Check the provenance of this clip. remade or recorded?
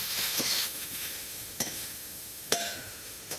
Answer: remade